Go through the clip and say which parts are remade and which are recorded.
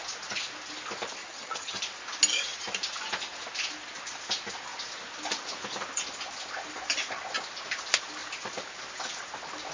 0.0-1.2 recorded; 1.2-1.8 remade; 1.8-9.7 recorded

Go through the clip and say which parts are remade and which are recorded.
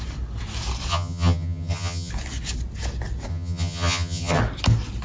0.0-0.9 recorded; 0.9-2.1 remade; 2.1-3.3 recorded; 3.3-4.4 remade; 4.4-5.0 recorded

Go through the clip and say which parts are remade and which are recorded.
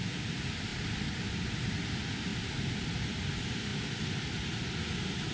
0.0-5.3 recorded